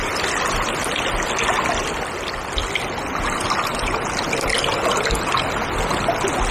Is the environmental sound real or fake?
real